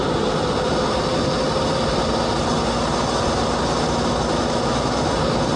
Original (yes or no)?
yes